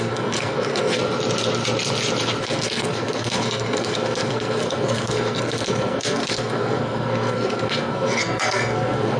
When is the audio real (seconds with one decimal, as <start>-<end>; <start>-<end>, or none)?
1.0-2.4